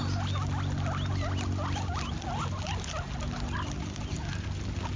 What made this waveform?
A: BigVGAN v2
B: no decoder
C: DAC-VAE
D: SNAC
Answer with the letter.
B